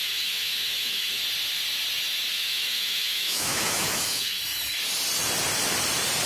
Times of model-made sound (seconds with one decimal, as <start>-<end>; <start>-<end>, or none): 0.0-1.2; 2.3-4.4